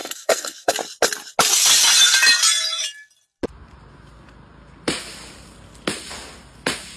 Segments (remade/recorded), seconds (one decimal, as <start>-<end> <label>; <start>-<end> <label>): 0.0-0.7 remade; 0.7-7.0 recorded

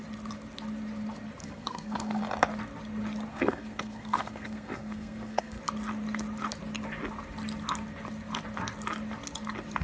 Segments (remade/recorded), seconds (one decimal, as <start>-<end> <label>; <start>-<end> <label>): 0.0-1.4 recorded; 1.4-2.2 remade; 2.2-3.3 recorded; 3.3-5.6 remade; 5.6-9.8 recorded

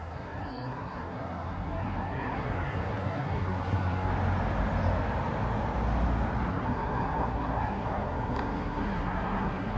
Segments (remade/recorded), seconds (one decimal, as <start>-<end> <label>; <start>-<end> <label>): 0.0-4.1 remade; 4.1-6.5 recorded; 6.5-9.8 remade

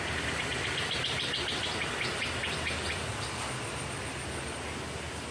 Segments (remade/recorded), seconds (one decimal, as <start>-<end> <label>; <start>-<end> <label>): 0.0-5.3 recorded

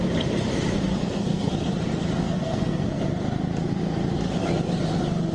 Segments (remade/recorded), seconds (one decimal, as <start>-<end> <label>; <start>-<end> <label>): 0.0-0.9 recorded; 0.9-1.5 remade; 1.5-2.2 recorded; 2.2-3.0 remade; 3.0-5.3 recorded

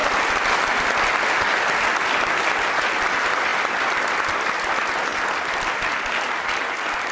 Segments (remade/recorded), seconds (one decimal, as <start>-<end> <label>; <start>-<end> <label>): 0.0-7.1 recorded

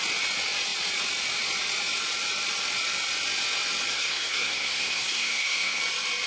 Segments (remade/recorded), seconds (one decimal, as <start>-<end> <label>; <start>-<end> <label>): 0.0-3.9 recorded; 3.9-5.8 remade; 5.8-6.3 recorded